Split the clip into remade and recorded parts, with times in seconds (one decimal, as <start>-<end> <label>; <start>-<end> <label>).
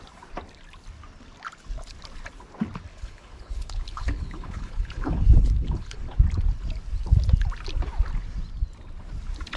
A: 0.0-2.9 recorded; 2.9-6.0 remade; 6.0-9.6 recorded